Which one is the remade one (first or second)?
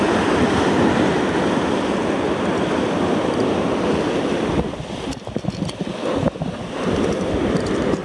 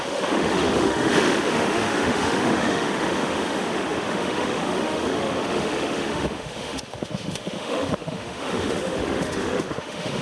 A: second